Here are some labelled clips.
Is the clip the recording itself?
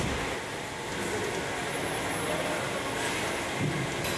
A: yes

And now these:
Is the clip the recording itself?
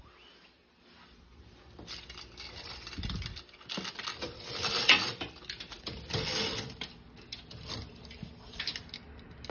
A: yes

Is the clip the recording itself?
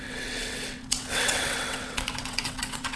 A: no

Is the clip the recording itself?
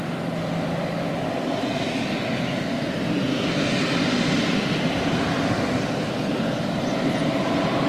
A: yes